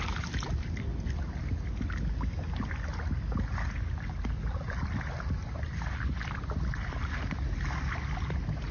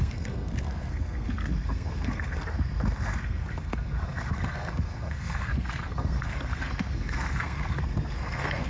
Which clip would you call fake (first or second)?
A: second